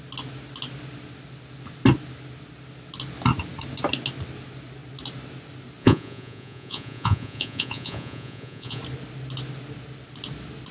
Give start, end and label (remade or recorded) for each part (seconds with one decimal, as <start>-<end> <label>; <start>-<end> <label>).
0.0-5.8 recorded; 5.8-8.8 remade; 8.8-10.7 recorded